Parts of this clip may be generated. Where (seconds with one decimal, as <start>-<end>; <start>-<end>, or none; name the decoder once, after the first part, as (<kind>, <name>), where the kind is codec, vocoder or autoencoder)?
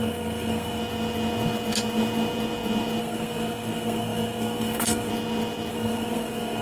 0.0-0.8 (codec, SNAC); 3.0-5.1; 5.7-6.6